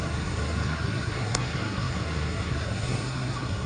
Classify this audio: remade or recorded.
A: remade